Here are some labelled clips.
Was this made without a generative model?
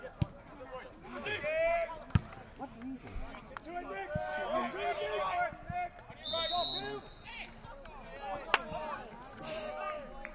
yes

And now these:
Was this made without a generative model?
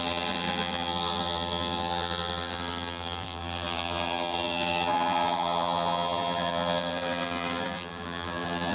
no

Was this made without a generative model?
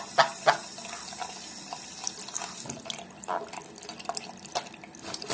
yes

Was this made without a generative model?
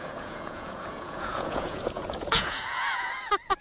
no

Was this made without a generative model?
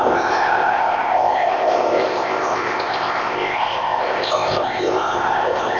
no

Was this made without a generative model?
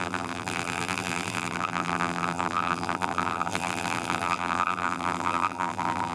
no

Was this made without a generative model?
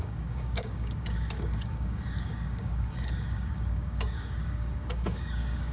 no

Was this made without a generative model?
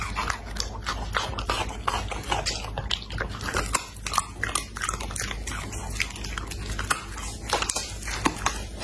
yes